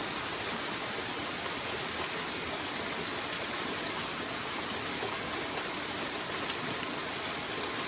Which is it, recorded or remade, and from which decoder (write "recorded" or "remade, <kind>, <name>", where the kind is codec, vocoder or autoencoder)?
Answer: recorded